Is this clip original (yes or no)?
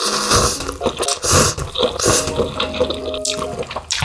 yes